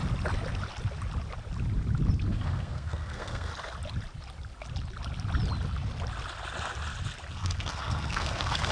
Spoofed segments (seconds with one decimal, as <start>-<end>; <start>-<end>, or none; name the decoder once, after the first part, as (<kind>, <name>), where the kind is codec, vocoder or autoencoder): 2.3-3.5 (codec, SNAC); 7.3-8.7